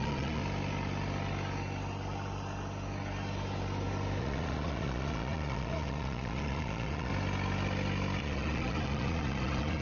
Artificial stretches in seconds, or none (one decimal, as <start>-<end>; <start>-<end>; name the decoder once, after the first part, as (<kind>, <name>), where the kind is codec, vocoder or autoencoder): 0.0-0.4 (vocoder, Vocos); 4.2-7.1; 8.2-9.8